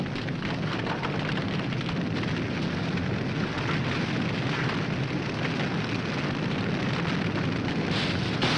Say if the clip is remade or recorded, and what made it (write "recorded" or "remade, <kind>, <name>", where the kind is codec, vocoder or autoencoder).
recorded